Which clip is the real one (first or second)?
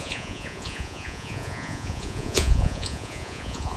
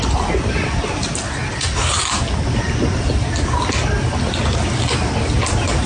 second